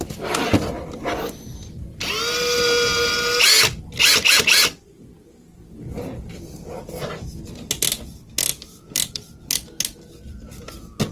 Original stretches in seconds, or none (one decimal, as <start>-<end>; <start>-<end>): 0.0-8.5; 10.6-11.1